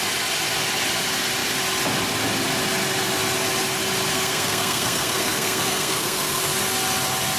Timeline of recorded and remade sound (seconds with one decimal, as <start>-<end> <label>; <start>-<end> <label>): 0.0-4.1 recorded; 4.1-6.5 remade; 6.5-7.4 recorded